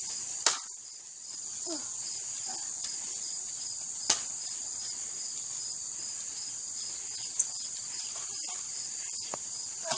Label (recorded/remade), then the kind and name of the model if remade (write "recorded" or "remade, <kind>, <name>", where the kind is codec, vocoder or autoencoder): recorded